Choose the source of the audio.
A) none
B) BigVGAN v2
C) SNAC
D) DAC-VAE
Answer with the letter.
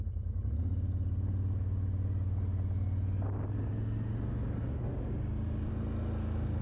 A